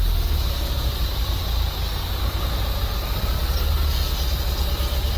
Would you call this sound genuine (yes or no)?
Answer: yes